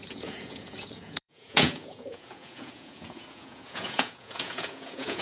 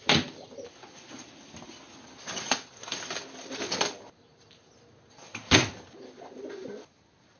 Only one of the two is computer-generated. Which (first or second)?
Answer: first